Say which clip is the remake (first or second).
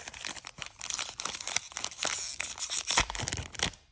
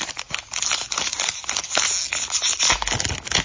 first